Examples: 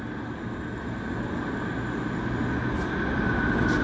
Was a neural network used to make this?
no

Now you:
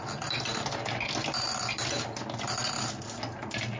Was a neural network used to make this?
no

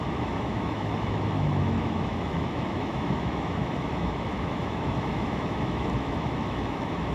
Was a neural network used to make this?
yes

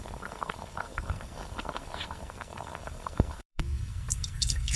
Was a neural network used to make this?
yes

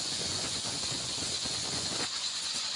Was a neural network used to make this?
yes